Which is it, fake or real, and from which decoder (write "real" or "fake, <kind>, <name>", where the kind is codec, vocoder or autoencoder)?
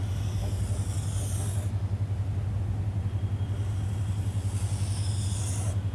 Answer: real